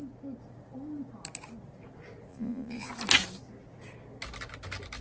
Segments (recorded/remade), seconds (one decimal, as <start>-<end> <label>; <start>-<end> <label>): 0.0-2.3 recorded; 2.3-2.9 remade; 2.9-5.0 recorded